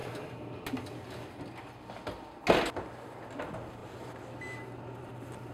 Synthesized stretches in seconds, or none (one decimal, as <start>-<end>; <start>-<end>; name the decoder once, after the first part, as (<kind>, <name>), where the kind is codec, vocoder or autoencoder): none